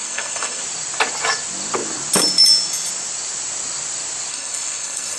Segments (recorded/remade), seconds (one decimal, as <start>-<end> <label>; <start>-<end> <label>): 0.0-0.6 remade; 0.6-4.3 recorded; 4.3-5.2 remade